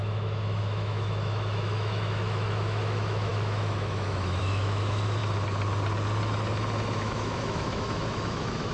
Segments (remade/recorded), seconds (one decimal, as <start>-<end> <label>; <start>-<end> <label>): 0.0-5.2 remade; 5.2-7.0 recorded; 7.0-8.7 remade